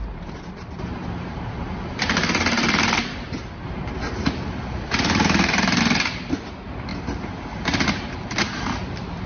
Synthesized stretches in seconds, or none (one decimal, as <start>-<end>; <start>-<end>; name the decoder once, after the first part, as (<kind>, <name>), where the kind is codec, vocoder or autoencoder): 0.9-5.8 (vocoder, BigVGAN v2); 6.9-9.3